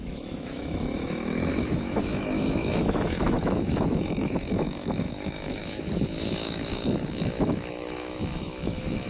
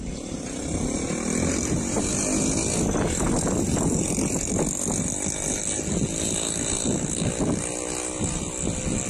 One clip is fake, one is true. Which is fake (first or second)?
first